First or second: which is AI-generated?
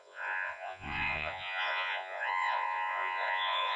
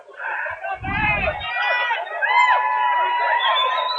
first